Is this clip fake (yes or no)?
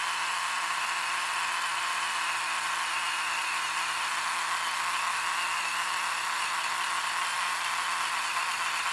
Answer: no